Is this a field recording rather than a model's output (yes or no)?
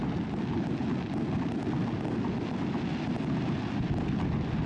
yes